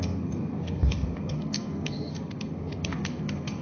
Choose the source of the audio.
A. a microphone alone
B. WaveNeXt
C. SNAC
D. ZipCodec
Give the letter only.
C